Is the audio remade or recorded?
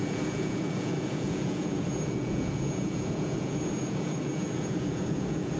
remade